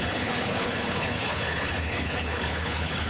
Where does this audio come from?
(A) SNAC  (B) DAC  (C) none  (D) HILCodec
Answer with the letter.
D